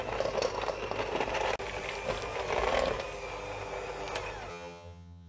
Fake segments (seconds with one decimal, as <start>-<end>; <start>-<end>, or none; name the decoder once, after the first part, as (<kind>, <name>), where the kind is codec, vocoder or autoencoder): 4.5-5.3 (vocoder, HiFi-GAN)